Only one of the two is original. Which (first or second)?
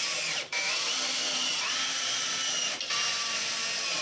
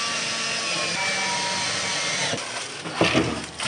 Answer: second